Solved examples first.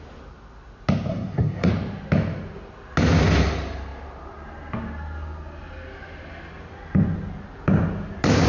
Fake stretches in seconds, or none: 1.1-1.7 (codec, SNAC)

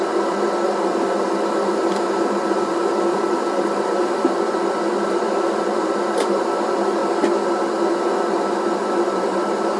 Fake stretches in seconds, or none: 0.0-7.0 (vocoder, BigVGAN v2); 8.2-9.8

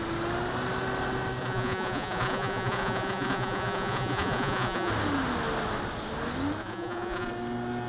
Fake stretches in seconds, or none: 1.4-4.9 (vocoder, Vocos); 6.6-7.3

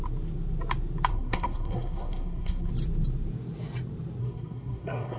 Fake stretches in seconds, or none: 1.1-2.7 (codec, SNAC); 4.2-5.2

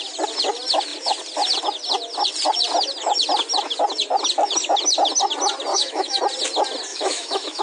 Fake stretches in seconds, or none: 5.7-6.2 (autoencoder, DAC-VAE); 6.9-7.6

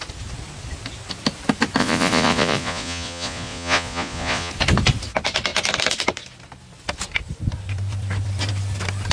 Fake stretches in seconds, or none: 1.8-4.5 (vocoder, Vocos)

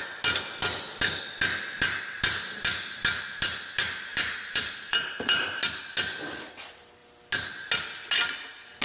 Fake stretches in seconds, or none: 4.1-5.5 (vocoder, BigVGAN v2)